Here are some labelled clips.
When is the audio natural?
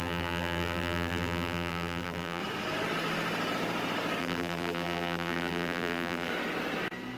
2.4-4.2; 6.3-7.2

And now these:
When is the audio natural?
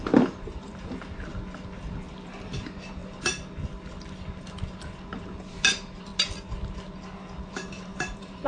0.7-2.1; 3.0-5.2; 6.1-7.5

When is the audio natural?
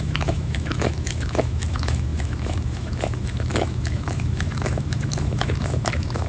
none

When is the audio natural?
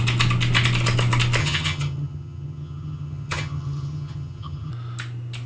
0.0-1.4; 4.7-5.5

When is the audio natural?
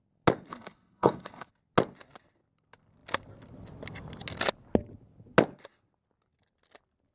0.0-0.5; 1.5-7.1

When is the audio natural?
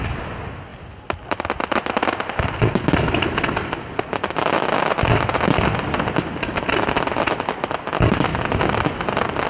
0.0-9.5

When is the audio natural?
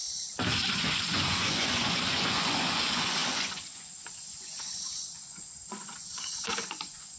0.0-0.7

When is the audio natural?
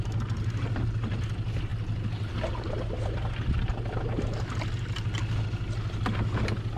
0.0-6.8